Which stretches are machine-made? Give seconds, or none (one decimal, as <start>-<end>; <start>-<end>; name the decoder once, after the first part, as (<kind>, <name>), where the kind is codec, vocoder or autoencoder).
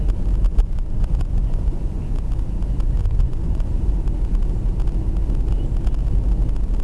0.5-2.2 (vocoder, Vocos); 3.0-3.9